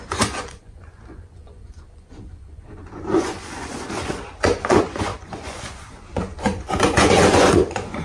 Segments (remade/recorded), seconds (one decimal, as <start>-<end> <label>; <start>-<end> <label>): 0.0-8.0 remade